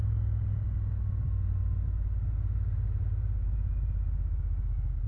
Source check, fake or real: real